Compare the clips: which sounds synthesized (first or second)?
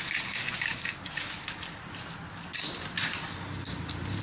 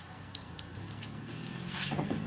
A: second